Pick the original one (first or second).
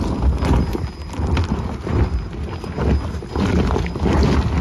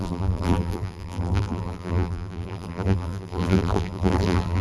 first